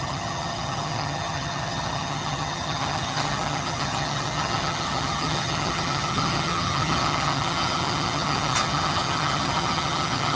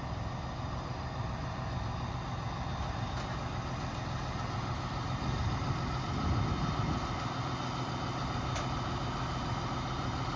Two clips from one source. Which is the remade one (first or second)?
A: first